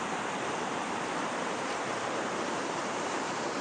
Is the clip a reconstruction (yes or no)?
yes